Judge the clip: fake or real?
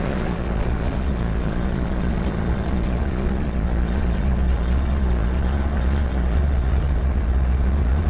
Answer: fake